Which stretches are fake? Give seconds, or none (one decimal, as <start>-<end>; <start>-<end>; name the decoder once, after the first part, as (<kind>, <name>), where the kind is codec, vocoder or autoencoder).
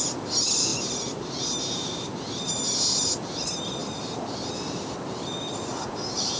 3.8-4.6 (vocoder, BigVGAN v2)